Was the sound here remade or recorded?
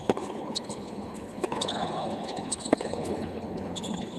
remade